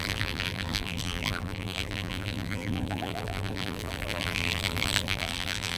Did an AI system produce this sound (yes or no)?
yes